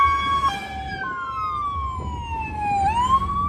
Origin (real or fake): real